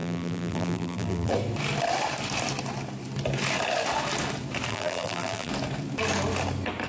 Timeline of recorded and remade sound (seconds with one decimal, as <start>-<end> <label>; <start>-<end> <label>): 0.0-1.3 remade; 1.3-4.7 recorded; 4.7-5.5 remade; 5.5-6.9 recorded